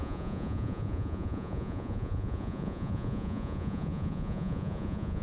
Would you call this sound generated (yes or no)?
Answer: yes